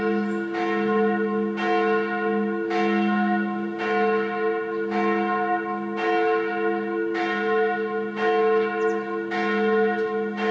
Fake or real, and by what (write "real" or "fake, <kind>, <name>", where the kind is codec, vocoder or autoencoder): real